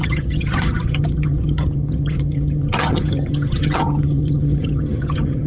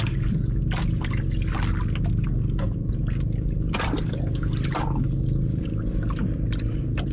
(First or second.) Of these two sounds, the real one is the second